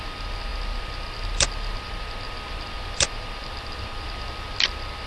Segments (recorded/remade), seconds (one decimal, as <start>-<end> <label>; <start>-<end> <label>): 0.0-5.1 recorded